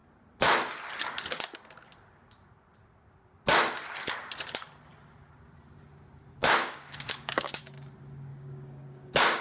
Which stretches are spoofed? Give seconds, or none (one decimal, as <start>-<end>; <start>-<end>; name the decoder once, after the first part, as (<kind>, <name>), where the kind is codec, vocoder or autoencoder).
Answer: 6.4-7.6 (codec, DAC); 8.3-9.4